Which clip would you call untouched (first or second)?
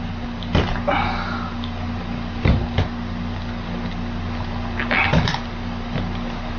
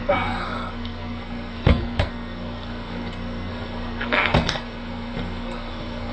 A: first